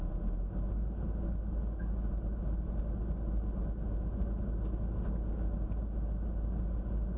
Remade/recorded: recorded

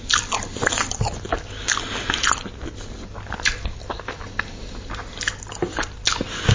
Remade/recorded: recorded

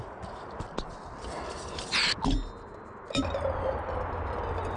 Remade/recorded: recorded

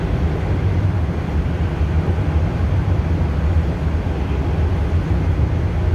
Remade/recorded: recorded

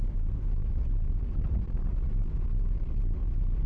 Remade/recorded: recorded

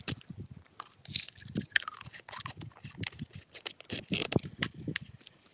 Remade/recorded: recorded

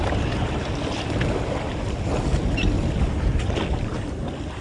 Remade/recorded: recorded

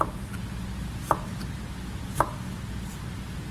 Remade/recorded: recorded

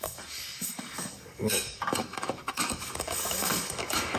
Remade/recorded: remade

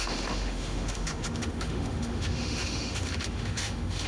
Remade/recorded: remade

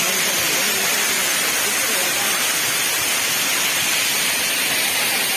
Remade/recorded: remade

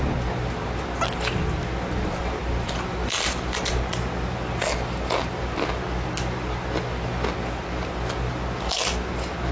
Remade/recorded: recorded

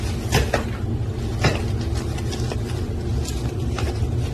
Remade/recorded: recorded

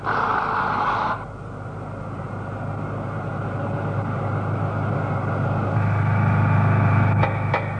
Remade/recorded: recorded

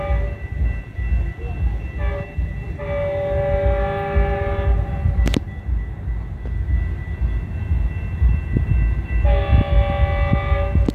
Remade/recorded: recorded